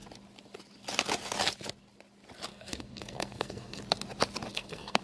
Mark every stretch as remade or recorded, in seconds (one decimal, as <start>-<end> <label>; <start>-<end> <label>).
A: 0.0-2.5 recorded; 2.5-3.8 remade; 3.8-4.5 recorded; 4.5-5.0 remade